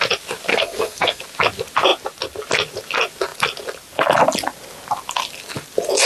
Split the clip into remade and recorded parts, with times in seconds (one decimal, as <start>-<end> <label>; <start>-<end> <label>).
0.0-0.5 recorded; 0.5-1.2 remade; 1.2-6.1 recorded